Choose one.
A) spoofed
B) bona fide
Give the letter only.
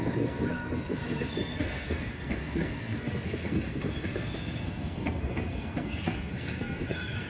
A